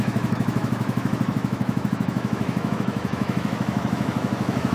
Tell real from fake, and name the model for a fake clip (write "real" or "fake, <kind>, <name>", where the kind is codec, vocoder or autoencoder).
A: fake, autoencoder, DAC-VAE